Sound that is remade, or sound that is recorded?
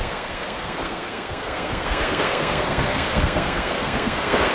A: remade